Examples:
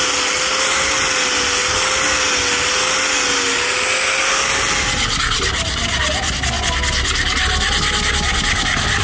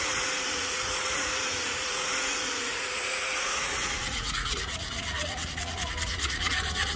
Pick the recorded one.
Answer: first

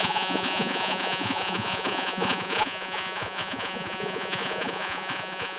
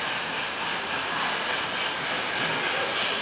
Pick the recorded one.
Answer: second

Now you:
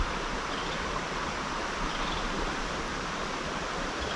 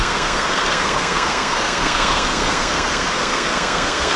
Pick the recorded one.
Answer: first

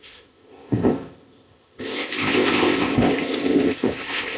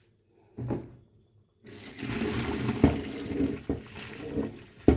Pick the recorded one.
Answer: second